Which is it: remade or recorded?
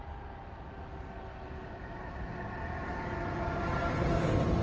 recorded